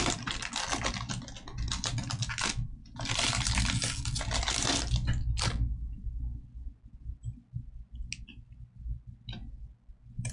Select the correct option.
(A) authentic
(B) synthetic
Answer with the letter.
A